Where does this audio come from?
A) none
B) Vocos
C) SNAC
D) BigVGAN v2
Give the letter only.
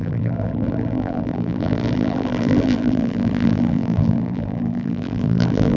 D